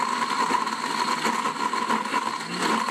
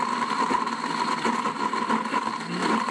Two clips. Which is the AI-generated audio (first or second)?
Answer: second